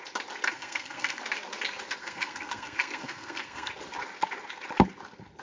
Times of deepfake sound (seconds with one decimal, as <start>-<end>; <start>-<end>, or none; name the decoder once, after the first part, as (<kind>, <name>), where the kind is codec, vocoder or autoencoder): 0.5-1.2 (codec, SNAC); 2.0-3.7